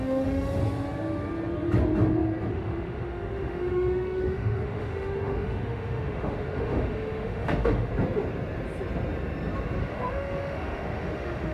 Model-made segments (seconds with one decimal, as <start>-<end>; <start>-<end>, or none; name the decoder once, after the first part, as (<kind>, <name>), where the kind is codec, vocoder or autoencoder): 0.0-0.6 (autoencoder, DAC-VAE); 2.5-7.9; 9.8-11.5